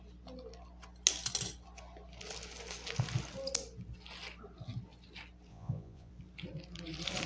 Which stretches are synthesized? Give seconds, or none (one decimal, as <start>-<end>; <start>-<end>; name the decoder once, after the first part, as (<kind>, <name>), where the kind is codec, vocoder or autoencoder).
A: 5.5-6.1 (vocoder, Vocos)